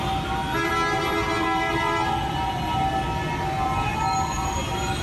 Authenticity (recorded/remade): recorded